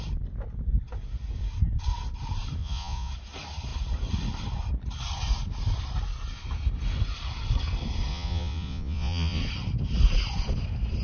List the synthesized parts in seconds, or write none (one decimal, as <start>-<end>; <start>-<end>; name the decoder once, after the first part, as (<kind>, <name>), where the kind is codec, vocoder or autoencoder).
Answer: 2.6-3.1 (vocoder, Vocos); 8.1-9.4